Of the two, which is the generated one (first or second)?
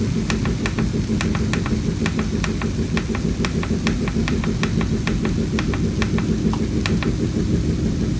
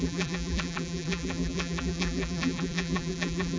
second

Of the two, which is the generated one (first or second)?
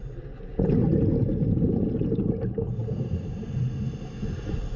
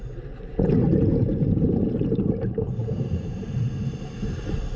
second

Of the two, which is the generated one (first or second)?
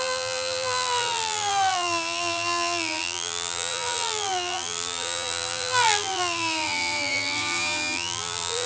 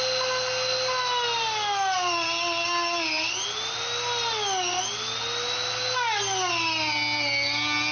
first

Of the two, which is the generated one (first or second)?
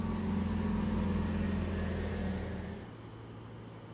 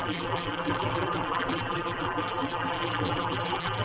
second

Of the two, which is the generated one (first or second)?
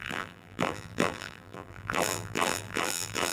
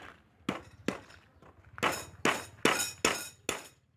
first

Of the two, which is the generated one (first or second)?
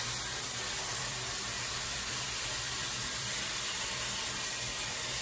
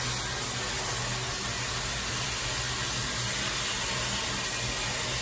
first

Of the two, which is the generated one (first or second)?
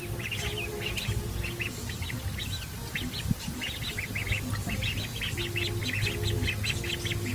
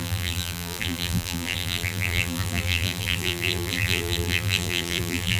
second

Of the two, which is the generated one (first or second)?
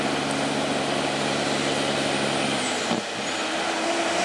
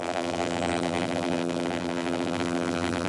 second